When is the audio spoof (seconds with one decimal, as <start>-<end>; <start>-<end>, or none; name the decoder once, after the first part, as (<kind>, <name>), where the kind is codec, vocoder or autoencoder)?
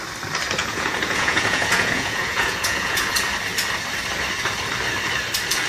0.6-3.1 (vocoder, Vocos)